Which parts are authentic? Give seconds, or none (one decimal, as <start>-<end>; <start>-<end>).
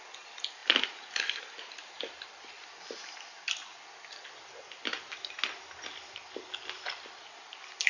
0.0-7.9